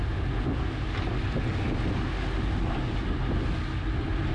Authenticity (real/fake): real